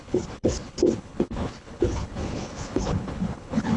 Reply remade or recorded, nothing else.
remade